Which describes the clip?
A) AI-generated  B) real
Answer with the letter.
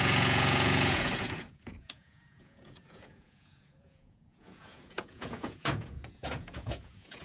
A